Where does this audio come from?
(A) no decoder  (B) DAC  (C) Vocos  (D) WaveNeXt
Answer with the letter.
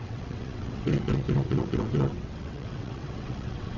D